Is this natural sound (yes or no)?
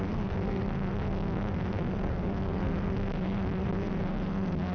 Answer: no